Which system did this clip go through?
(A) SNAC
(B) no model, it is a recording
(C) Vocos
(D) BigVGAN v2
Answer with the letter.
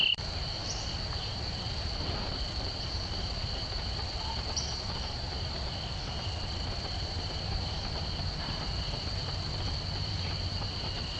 D